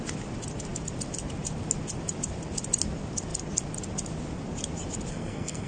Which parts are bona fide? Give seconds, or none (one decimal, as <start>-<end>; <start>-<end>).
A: 0.0-5.1